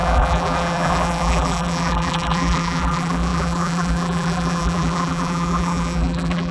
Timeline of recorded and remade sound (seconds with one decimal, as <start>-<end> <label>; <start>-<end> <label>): 0.0-6.5 remade